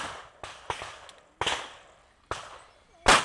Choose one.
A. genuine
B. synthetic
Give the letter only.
A